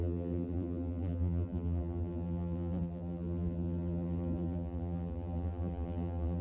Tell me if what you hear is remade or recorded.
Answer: remade